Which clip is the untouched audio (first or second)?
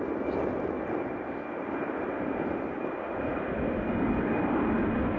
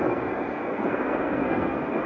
first